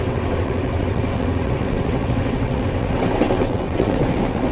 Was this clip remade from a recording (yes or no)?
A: yes